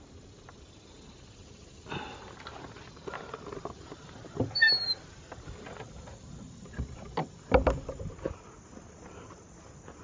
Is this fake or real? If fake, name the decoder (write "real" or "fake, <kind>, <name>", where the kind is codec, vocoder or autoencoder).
real